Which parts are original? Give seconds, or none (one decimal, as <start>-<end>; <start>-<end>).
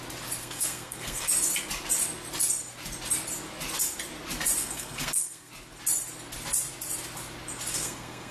0.0-0.4; 1.3-4.6; 5.5-7.7